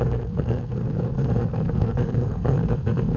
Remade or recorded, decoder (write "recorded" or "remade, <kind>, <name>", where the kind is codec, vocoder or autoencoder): remade, codec, SNAC